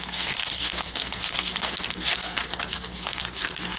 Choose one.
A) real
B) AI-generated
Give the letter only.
B